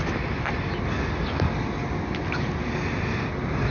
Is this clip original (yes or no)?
yes